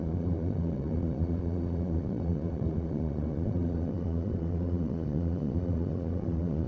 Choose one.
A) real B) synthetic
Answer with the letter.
B